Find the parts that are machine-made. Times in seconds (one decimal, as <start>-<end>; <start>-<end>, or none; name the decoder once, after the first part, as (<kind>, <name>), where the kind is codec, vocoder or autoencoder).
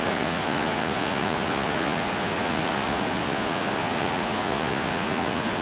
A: 0.0-5.6 (vocoder, Vocos)